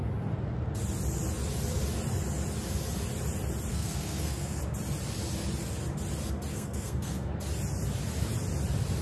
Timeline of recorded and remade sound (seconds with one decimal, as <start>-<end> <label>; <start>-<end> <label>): 0.0-3.7 recorded; 3.7-4.6 remade; 4.6-6.5 recorded; 6.5-7.3 remade; 7.3-9.0 recorded